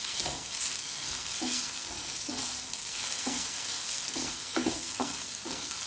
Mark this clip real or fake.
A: fake